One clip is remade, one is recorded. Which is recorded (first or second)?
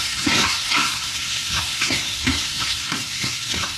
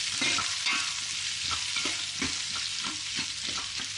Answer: second